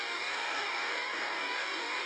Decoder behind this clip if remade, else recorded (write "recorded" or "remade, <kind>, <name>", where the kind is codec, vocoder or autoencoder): remade, codec, DAC